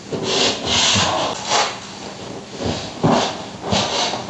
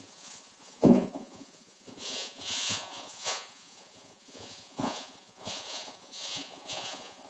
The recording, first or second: first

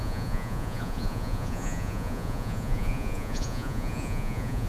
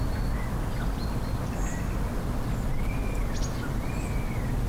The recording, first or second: second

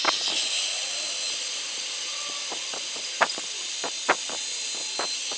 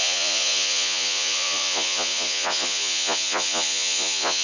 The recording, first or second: first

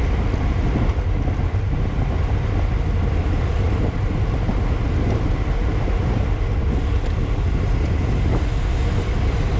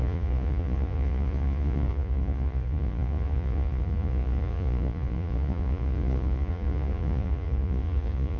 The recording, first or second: first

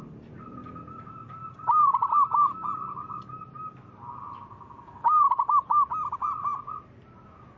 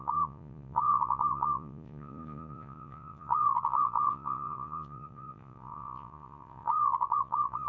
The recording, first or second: first